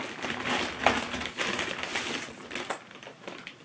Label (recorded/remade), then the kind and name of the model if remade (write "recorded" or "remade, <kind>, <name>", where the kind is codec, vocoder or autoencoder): recorded